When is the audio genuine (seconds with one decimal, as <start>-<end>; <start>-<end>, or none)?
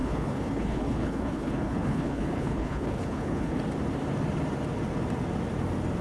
3.6-6.0